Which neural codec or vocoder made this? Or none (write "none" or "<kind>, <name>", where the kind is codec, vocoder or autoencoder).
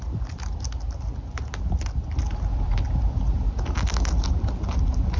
none